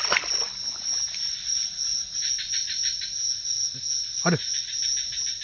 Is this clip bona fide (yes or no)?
yes